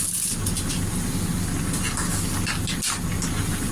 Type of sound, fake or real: real